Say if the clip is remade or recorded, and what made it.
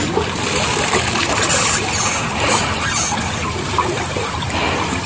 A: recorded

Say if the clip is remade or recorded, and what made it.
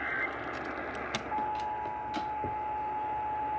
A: recorded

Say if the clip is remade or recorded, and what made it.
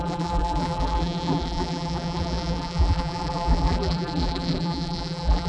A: remade, vocoder, BigVGAN v2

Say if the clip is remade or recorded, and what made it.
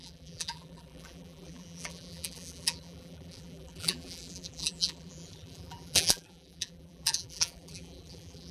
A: remade, vocoder, BigVGAN v2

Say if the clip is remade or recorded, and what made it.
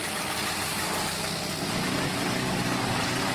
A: recorded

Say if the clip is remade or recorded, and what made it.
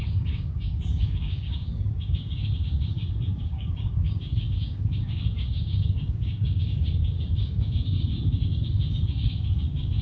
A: remade, codec, DAC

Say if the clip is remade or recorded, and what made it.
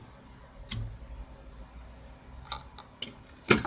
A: recorded